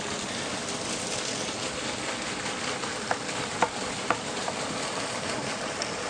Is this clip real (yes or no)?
yes